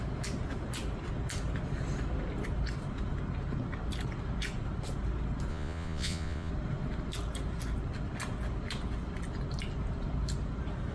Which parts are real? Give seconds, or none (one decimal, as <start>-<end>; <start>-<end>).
0.0-5.5; 6.5-10.9